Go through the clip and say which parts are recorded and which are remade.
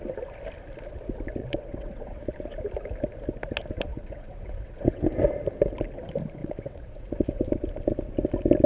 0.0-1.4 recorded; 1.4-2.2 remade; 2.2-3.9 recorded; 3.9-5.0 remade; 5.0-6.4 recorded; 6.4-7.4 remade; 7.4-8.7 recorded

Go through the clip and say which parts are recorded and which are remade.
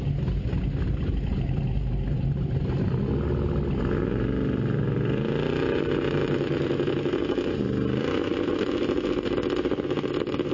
0.0-10.5 recorded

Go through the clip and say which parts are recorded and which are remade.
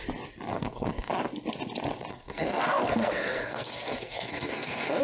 0.0-0.5 recorded; 0.5-1.1 remade; 1.1-2.1 recorded; 2.1-5.0 remade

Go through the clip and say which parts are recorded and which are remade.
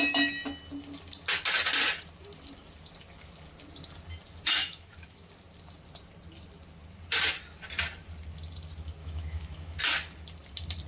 0.0-4.6 recorded; 4.6-5.3 remade; 5.3-9.0 recorded; 9.0-9.8 remade; 9.8-10.9 recorded